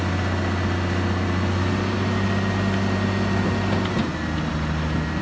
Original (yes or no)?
yes